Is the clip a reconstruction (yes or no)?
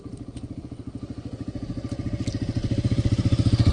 no